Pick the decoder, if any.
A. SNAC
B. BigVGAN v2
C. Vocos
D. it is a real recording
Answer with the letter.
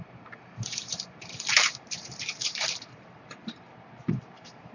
B